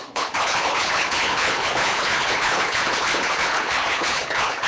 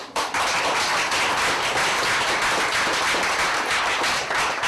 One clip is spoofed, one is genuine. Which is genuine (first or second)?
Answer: second